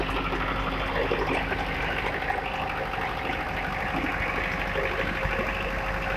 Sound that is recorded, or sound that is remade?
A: recorded